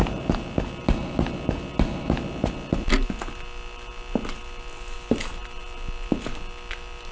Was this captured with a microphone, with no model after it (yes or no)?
yes